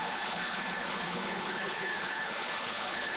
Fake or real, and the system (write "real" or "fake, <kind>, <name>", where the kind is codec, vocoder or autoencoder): fake, codec, HILCodec